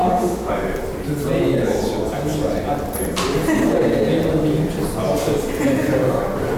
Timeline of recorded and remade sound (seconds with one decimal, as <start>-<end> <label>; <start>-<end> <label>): 0.0-0.5 remade; 0.5-6.6 recorded